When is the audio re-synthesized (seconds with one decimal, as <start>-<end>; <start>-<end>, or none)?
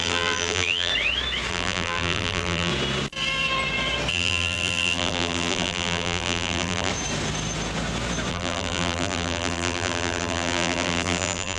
0.0-0.9; 1.5-2.7; 4.1-6.9; 8.3-11.6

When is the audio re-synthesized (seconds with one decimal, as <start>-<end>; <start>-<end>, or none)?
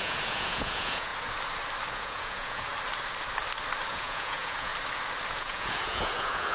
0.0-1.1; 1.9-2.7; 3.9-4.7; 5.3-6.5